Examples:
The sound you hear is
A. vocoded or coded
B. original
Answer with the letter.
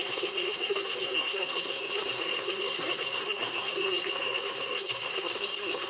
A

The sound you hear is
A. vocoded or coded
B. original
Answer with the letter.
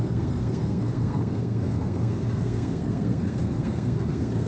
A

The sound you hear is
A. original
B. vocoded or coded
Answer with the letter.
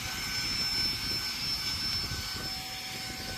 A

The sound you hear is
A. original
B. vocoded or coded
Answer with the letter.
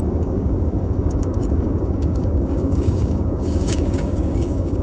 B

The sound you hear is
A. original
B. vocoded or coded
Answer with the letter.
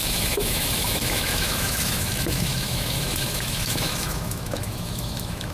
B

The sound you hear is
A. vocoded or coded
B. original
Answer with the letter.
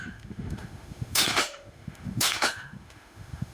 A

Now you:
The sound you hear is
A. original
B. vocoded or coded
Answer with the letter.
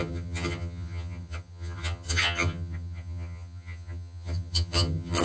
B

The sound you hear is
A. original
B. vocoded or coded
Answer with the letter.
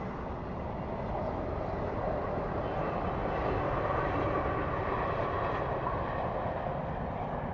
A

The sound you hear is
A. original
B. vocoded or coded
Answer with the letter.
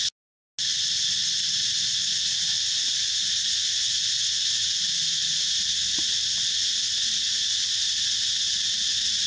A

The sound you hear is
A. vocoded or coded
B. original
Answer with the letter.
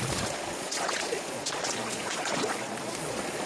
A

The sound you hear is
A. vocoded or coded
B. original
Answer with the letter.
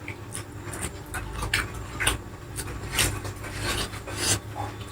B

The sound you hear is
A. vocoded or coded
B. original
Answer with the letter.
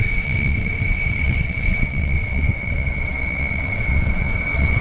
A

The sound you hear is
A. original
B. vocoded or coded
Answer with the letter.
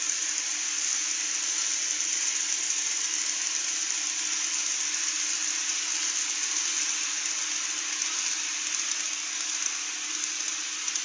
A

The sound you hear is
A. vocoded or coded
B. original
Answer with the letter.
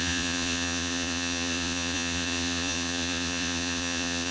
A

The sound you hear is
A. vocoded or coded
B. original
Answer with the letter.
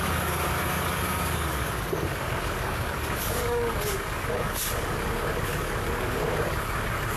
A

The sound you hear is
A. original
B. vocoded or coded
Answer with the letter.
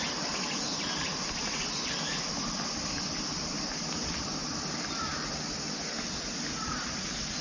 A